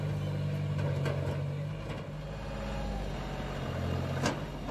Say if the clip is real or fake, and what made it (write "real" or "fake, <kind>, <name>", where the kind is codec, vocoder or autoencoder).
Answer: real